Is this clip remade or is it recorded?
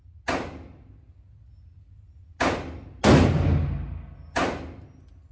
recorded